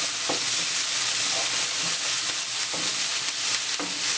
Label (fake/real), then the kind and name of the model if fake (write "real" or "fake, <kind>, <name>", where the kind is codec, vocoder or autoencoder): real